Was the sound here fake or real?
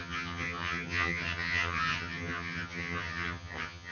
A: fake